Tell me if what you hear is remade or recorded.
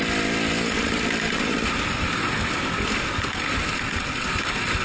recorded